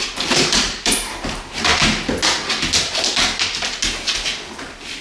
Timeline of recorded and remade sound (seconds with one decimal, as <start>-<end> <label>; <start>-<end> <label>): 0.0-1.7 remade; 1.7-5.0 recorded